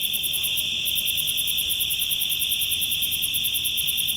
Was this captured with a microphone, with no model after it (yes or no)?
yes